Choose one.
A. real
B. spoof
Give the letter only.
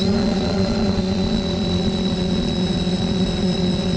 B